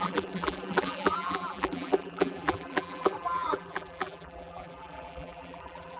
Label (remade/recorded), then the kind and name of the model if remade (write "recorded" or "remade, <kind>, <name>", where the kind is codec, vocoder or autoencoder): remade, vocoder, BigVGAN v2